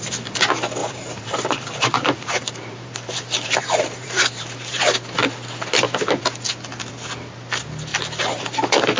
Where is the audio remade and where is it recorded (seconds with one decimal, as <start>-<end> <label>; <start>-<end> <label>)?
0.0-0.8 recorded; 0.8-4.8 remade; 4.8-7.9 recorded; 7.9-8.4 remade; 8.4-9.0 recorded